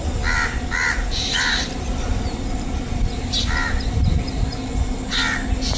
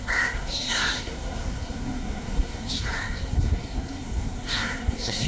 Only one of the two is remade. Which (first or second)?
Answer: second